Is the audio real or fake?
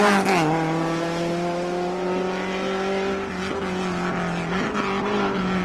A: real